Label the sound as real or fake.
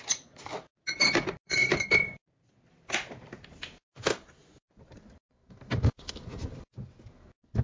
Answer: real